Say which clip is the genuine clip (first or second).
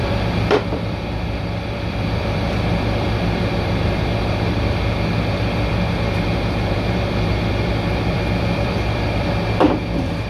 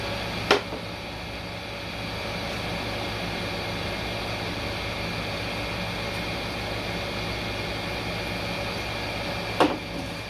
second